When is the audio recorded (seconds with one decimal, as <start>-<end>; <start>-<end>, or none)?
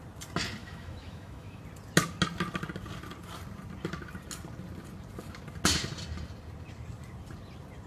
0.0-0.6; 1.6-7.9